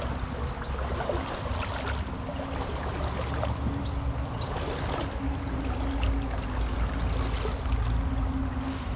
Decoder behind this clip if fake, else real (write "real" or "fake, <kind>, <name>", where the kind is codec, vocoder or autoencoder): real